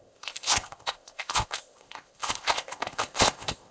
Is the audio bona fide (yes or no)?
no